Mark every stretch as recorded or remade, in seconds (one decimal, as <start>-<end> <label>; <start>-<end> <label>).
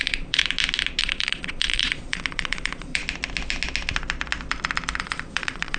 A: 0.0-0.4 remade; 0.4-1.0 recorded; 1.0-3.0 remade; 3.0-5.0 recorded; 5.0-5.8 remade